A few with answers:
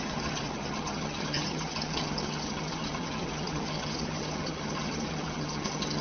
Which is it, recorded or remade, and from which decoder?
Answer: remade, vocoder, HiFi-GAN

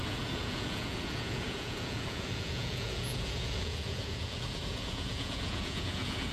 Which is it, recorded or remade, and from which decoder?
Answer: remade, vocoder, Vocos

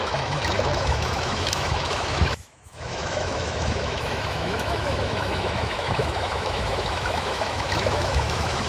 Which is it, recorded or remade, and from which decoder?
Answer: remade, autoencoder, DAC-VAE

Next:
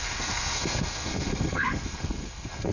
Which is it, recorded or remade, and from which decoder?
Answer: remade, codec, SNAC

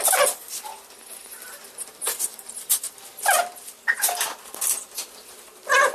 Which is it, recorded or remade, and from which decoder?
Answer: recorded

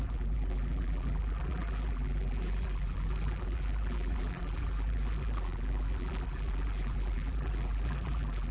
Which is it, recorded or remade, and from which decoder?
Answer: remade, vocoder, BigVGAN v2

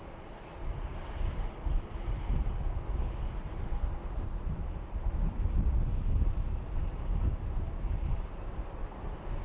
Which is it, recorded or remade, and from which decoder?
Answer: recorded